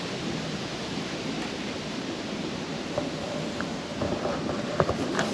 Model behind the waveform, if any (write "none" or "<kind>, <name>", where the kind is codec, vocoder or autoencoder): none